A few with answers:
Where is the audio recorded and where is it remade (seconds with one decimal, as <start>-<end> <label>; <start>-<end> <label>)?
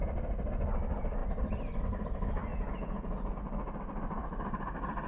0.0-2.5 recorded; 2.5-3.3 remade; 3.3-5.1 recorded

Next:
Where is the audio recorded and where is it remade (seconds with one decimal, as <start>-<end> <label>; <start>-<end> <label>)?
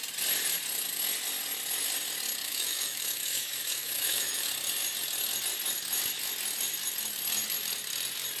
0.0-2.4 recorded; 2.4-4.5 remade; 4.5-8.4 recorded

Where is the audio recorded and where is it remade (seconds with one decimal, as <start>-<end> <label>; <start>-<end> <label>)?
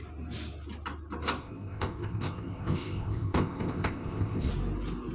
0.0-1.4 recorded; 1.4-4.5 remade; 4.5-5.1 recorded